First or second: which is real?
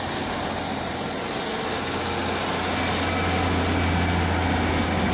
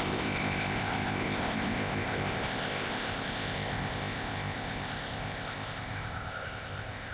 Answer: first